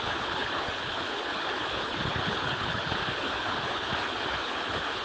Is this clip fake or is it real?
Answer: fake